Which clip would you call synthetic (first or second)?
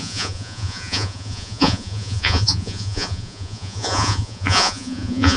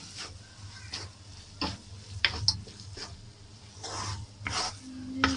first